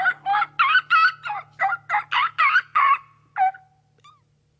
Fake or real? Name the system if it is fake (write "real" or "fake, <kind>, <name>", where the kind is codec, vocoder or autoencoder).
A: real